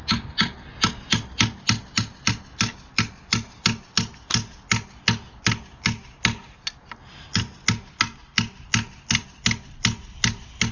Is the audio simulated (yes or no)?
no